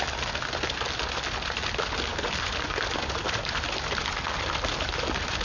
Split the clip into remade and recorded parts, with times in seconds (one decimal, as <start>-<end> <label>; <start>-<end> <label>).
0.0-2.1 recorded; 2.1-5.4 remade